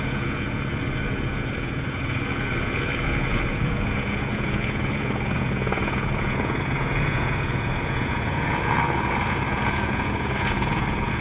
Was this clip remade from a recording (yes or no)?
yes